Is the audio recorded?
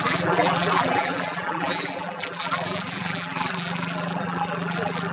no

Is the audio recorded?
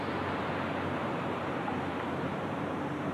no